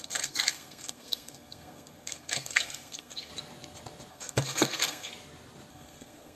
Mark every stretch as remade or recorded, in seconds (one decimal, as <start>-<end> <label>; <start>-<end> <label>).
0.0-3.3 remade; 3.3-4.1 recorded; 4.1-5.1 remade; 5.1-5.7 recorded; 5.7-6.4 remade